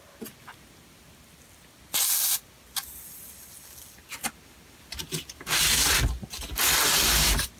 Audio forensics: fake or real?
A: real